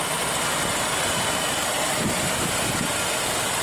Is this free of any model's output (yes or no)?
no